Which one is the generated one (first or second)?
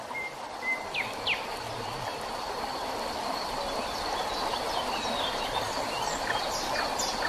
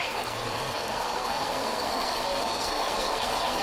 second